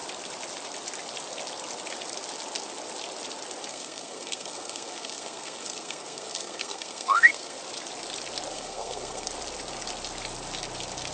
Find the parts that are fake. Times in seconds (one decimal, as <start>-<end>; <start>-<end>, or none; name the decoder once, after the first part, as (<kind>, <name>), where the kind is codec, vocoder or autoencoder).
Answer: 3.7-7.6 (codec, SNAC); 8.5-9.3